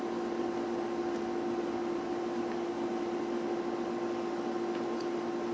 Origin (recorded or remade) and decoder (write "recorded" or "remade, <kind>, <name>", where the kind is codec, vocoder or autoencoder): recorded